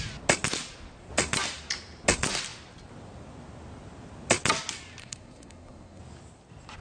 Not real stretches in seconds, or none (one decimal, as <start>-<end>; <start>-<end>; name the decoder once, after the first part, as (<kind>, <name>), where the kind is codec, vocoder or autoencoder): 5.0-6.0 (codec, SNAC)